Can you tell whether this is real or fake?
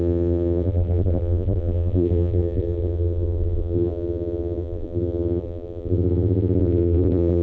fake